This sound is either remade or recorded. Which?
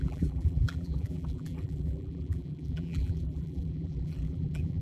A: remade